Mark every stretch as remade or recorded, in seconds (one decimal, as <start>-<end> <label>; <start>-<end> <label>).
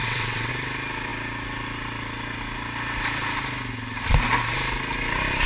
0.0-0.5 remade; 0.5-5.5 recorded